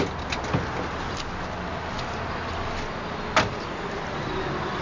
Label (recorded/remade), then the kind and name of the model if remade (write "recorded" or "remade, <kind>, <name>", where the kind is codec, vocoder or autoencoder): recorded